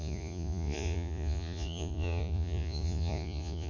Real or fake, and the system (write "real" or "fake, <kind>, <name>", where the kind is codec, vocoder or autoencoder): fake, vocoder, Vocos